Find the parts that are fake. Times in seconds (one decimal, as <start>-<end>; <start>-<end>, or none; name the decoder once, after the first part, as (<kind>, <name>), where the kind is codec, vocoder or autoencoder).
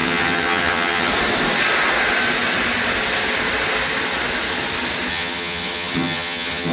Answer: 0.0-1.1 (vocoder, HiFi-GAN); 5.1-6.7